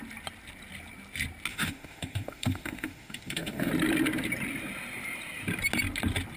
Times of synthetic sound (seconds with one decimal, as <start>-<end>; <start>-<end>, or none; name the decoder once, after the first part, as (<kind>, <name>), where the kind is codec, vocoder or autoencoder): 1.5-3.7 (autoencoder, DAC-VAE)